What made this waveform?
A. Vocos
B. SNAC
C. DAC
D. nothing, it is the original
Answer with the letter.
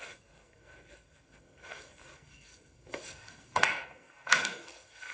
B